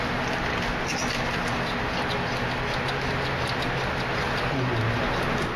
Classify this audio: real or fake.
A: real